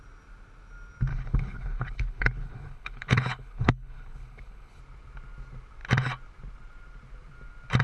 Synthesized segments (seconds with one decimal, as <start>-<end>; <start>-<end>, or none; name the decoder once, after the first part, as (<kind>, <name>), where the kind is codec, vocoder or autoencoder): 1.1-4.8 (codec, HILCodec)